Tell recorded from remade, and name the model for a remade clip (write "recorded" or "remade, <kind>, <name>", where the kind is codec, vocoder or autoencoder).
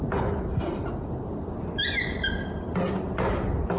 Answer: recorded